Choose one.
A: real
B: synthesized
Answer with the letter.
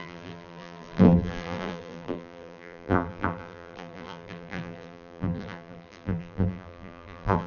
B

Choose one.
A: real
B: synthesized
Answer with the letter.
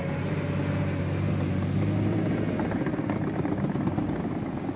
A